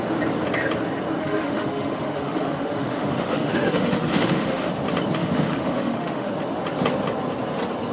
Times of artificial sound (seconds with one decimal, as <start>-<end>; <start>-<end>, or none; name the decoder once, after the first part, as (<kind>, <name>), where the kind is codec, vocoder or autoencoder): 1.2-4.7 (autoencoder, DAC-VAE); 5.2-6.3

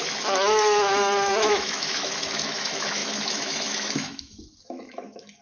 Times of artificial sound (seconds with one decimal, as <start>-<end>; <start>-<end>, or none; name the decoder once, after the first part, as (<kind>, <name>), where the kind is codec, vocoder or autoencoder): 0.0-5.4 (autoencoder, DAC-VAE)

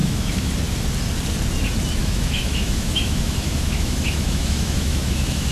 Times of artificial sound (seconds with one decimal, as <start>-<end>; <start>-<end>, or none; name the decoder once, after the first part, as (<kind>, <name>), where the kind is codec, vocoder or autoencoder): 0.0-0.5 (autoencoder, DAC-VAE); 2.0-5.5

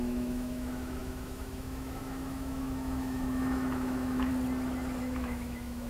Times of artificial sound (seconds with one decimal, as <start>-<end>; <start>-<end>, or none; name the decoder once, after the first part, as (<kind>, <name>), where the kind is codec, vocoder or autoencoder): 0.0-4.3 (autoencoder, DAC-VAE); 5.0-5.9

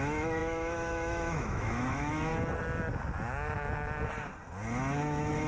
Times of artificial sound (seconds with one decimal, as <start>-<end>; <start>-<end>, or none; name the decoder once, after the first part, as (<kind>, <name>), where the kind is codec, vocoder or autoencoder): 0.0-2.3 (autoencoder, DAC-VAE); 5.0-5.5

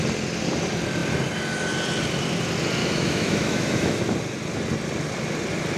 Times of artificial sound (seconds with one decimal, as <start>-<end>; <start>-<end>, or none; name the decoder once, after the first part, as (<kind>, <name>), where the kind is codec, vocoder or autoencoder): 2.8-4.0 (autoencoder, DAC-VAE)